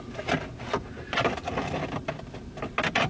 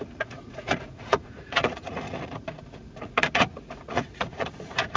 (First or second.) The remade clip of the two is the second